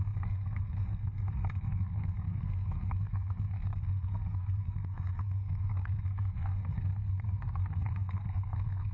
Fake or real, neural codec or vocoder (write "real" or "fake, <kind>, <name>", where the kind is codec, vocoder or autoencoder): fake, codec, SNAC